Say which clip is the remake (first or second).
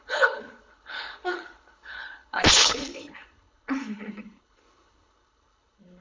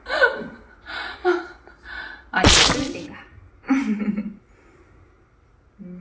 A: first